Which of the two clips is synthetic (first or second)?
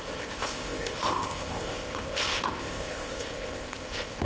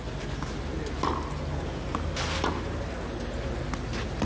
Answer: first